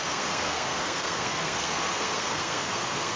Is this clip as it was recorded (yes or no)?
no